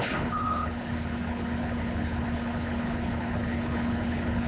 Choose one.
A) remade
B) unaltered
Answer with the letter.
A